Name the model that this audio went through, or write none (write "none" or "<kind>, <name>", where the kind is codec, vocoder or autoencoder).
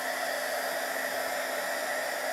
none